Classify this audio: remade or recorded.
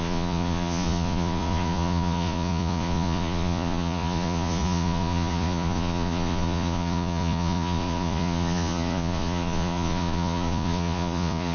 remade